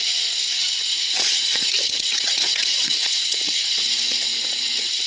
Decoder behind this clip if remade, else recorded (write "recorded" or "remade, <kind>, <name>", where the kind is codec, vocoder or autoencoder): remade, vocoder, WaveNeXt